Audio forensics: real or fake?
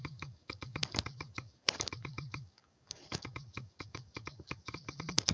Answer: fake